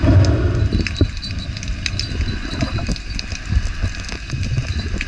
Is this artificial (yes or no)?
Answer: no